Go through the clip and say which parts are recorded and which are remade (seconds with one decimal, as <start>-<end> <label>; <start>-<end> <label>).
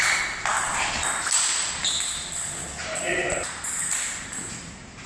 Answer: 0.0-2.8 recorded; 2.8-5.1 remade